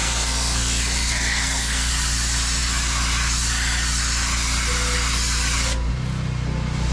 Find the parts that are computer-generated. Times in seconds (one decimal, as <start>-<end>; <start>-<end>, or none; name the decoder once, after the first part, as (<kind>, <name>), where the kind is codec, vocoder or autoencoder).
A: 0.0-1.9 (codec, SNAC)